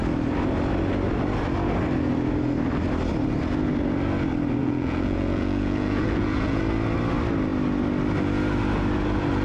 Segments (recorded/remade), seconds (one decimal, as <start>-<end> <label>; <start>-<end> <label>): 0.0-4.6 recorded; 4.6-6.6 remade; 6.6-9.4 recorded